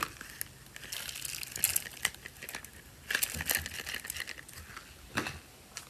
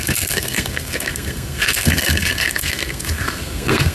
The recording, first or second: first